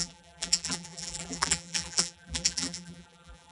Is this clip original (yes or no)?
no